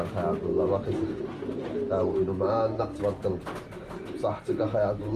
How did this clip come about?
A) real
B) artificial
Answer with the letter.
A